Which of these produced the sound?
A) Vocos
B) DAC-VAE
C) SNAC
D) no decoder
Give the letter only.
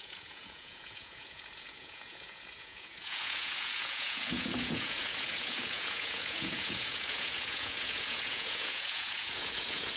A